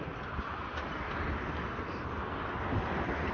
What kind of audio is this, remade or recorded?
recorded